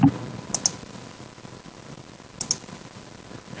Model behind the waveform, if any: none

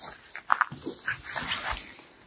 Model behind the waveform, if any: none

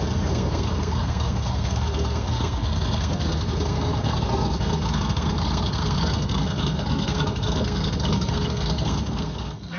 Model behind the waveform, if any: codec, SNAC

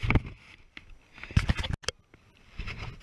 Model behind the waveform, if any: none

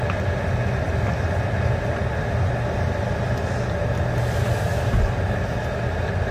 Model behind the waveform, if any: none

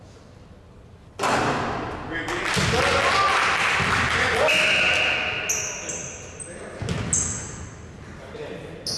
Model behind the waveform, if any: none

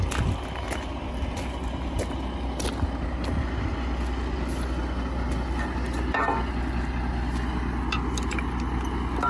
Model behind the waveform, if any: none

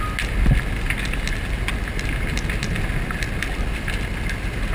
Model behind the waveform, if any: none